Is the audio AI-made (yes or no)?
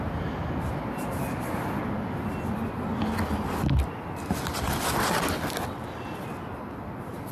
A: no